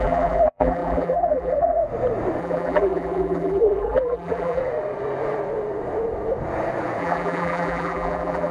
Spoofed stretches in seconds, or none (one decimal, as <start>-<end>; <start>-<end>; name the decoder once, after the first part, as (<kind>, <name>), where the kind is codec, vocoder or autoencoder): 0.0-1.8 (vocoder, BigVGAN v2); 2.4-4.6; 7.0-8.5

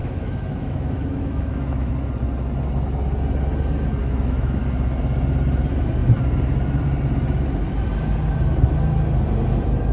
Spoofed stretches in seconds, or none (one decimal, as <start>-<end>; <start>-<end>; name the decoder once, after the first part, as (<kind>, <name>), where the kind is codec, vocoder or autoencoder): 0.0-1.9 (autoencoder, DAC-VAE); 4.0-4.6